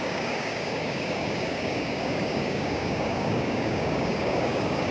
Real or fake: fake